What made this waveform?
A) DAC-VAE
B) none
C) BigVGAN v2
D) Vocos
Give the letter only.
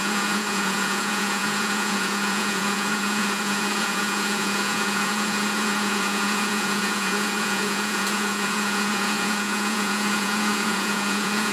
D